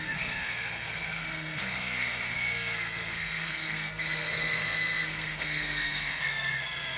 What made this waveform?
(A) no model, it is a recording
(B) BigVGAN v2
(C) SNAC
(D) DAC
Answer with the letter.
C